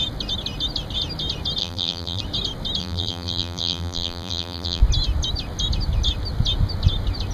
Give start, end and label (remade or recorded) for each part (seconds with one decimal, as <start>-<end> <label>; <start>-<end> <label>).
0.0-1.6 recorded; 1.6-2.2 remade; 2.2-2.8 recorded; 2.8-4.8 remade; 4.8-7.3 recorded